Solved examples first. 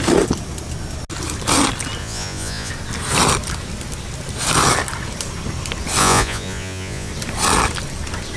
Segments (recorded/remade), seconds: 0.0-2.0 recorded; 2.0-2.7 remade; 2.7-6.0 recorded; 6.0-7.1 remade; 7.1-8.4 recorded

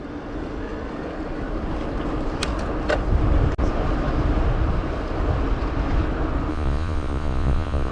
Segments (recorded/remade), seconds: 0.0-6.5 recorded; 6.5-7.9 remade

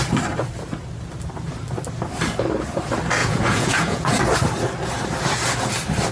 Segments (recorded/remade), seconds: 0.0-3.2 recorded; 3.2-4.2 remade; 4.2-6.1 recorded

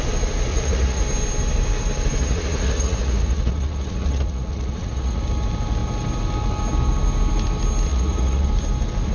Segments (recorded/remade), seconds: 0.0-0.5 recorded; 0.5-1.0 remade; 1.0-2.2 recorded; 2.2-5.2 remade; 5.2-7.9 recorded; 7.9-8.5 remade; 8.5-9.1 recorded